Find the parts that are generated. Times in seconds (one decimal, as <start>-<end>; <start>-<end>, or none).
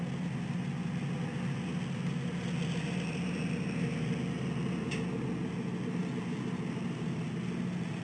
none